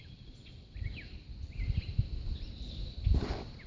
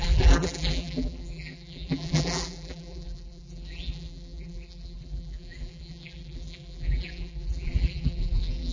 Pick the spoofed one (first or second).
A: second